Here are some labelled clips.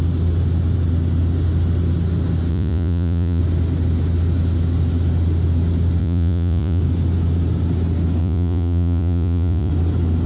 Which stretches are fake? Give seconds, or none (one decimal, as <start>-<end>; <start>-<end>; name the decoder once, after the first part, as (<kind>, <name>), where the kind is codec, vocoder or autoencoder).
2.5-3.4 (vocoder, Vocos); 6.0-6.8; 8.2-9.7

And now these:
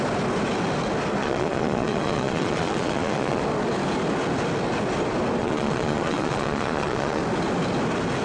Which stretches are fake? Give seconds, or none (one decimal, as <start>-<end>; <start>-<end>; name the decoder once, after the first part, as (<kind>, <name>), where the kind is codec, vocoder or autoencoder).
1.2-3.4 (vocoder, Vocos); 5.4-7.2

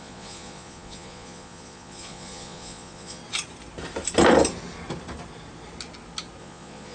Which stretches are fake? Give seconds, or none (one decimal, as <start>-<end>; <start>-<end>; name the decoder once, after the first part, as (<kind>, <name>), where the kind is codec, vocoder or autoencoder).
0.0-3.2 (vocoder, Vocos); 6.4-6.9